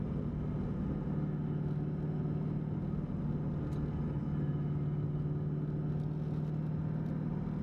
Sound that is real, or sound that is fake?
real